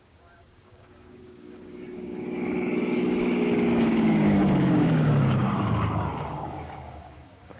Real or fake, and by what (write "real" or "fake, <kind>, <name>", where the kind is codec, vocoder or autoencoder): fake, codec, DAC